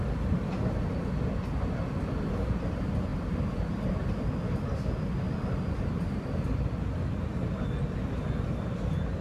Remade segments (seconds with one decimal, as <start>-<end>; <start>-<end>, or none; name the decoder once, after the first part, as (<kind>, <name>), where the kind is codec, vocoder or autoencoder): 3.1-4.0 (vocoder, BigVGAN v2)